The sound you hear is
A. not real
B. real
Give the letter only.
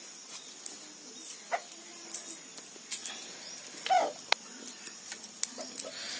B